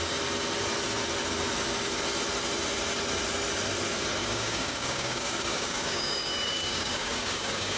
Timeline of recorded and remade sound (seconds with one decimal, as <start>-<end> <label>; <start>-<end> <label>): 0.0-4.2 recorded; 4.2-7.8 remade